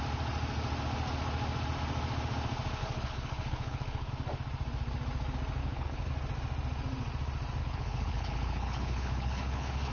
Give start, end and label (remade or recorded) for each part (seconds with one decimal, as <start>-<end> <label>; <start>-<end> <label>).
0.0-2.8 recorded; 2.8-4.1 remade; 4.1-5.6 recorded; 5.6-6.1 remade; 6.1-7.6 recorded; 7.6-9.9 remade